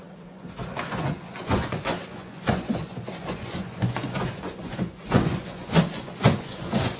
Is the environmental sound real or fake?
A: fake